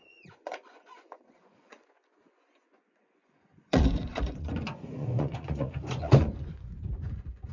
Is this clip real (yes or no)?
no